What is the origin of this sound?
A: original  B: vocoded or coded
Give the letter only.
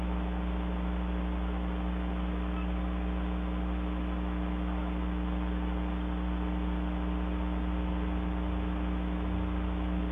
A